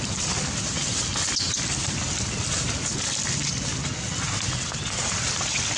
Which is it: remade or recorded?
recorded